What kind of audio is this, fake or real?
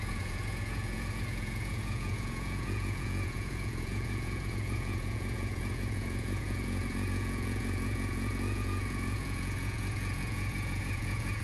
fake